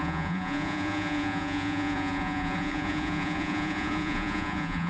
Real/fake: fake